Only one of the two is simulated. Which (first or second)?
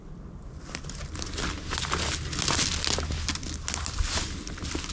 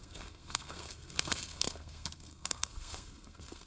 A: second